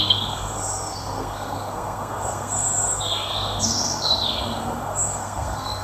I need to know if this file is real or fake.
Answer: fake